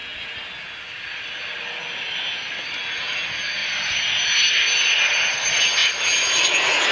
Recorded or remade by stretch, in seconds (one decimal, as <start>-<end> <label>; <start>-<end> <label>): 0.0-6.9 recorded